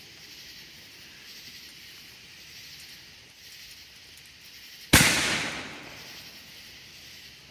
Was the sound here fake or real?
real